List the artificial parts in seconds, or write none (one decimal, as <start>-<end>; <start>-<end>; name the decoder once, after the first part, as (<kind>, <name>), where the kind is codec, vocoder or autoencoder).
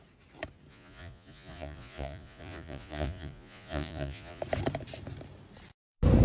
0.7-4.4 (vocoder, Vocos)